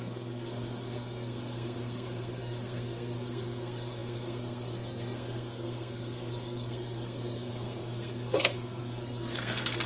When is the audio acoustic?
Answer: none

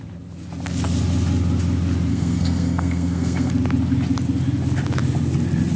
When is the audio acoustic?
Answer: 0.0-2.1; 3.5-5.8

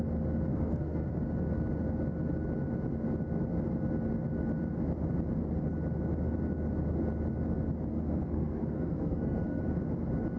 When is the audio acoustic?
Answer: 0.0-0.5; 1.1-7.9; 9.6-10.4

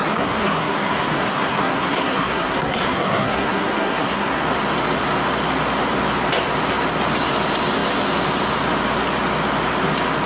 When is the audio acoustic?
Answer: 4.4-10.3

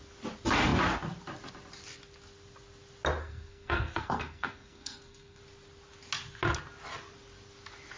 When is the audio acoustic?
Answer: 0.0-3.2; 5.4-8.0

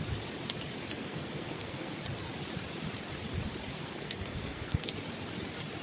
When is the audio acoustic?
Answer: 0.0-0.9; 2.0-3.7; 4.9-5.8

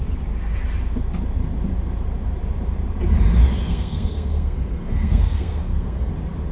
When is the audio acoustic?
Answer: 0.0-3.6; 6.1-6.5

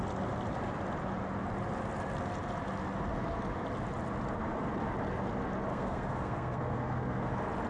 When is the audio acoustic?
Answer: 0.0-5.7; 7.3-7.7